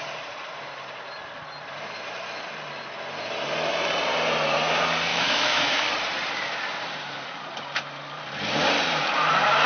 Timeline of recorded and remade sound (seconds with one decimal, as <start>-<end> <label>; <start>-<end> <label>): 0.0-5.1 recorded; 5.1-5.9 remade; 5.9-9.7 recorded

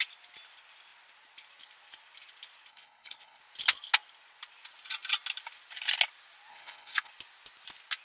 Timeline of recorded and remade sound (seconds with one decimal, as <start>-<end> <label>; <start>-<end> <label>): 0.0-2.7 recorded; 2.7-3.4 remade; 3.4-6.5 recorded; 6.5-7.1 remade; 7.1-8.0 recorded

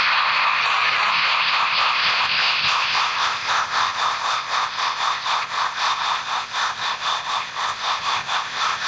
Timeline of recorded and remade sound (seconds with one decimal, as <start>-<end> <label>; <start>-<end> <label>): 0.0-0.6 remade; 0.6-1.1 recorded; 1.1-8.9 remade

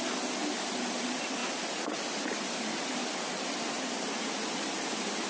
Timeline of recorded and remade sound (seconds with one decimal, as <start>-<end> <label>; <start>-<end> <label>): 0.0-5.3 recorded